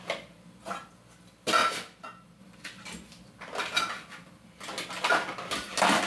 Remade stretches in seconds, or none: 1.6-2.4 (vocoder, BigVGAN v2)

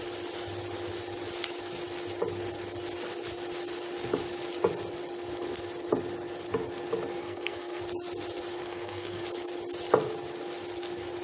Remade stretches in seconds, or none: 7.2-7.8 (codec, SNAC); 8.6-9.2

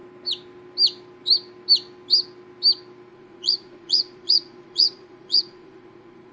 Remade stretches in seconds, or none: 3.1-6.3 (vocoder, Vocos)